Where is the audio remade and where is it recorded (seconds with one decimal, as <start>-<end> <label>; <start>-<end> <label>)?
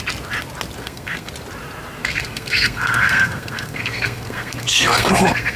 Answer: 0.0-0.8 recorded; 0.8-1.3 remade; 1.3-2.0 recorded; 2.0-5.6 remade